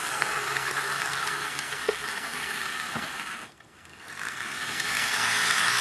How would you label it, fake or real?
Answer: fake